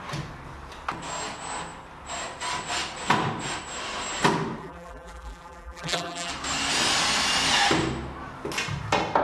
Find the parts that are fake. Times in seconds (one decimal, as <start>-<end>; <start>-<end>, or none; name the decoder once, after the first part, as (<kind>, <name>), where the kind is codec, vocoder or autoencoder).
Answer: 4.6-6.3 (vocoder, BigVGAN v2)